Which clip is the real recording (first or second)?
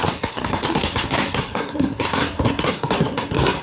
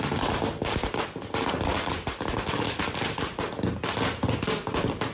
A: second